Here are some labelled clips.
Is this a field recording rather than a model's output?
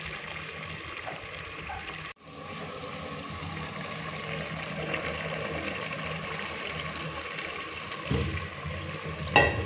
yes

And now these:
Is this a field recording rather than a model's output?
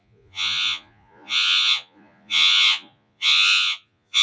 no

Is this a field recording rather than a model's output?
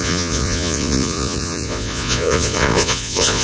no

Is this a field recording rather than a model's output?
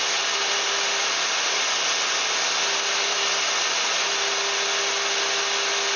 yes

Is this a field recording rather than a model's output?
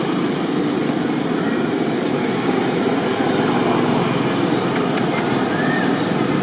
yes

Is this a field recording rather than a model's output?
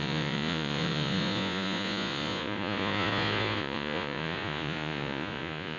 no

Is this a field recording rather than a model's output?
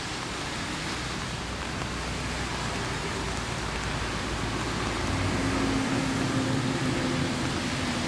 yes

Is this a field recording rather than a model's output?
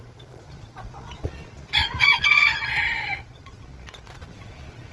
no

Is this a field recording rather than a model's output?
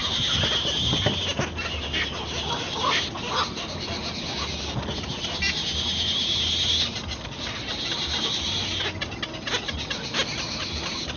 yes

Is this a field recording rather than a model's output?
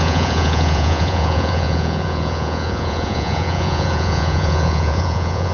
no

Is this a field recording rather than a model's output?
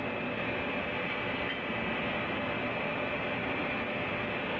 yes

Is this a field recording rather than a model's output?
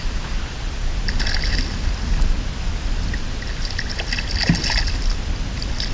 yes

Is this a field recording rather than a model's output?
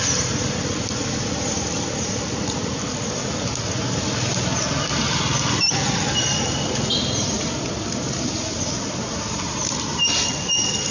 yes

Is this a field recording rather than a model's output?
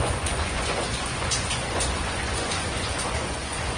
no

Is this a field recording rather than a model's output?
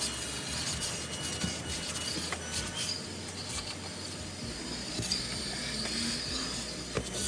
yes